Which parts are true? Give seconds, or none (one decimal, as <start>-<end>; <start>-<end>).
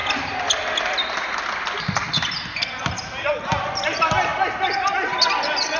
0.0-5.8